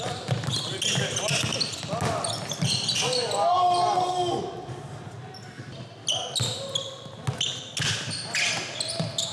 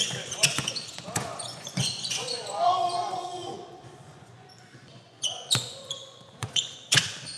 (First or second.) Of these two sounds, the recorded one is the first